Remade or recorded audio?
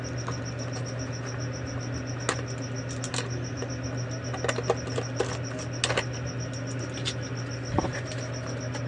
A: recorded